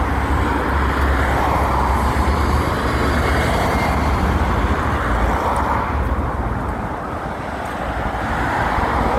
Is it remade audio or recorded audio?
recorded